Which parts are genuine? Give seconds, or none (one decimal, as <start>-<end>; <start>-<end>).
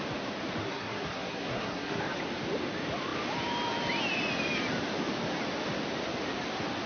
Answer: 0.0-0.6; 2.0-6.9